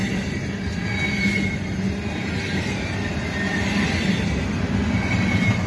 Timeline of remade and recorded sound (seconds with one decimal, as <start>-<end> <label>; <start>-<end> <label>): 0.0-0.8 remade; 0.8-2.2 recorded; 2.2-4.5 remade; 4.5-5.7 recorded